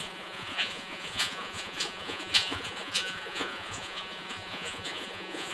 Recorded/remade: remade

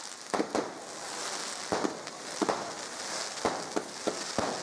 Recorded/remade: recorded